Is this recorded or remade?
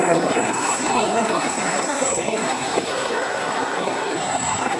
remade